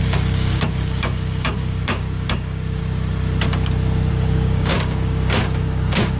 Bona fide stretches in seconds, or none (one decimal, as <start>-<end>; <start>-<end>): 2.8-4.1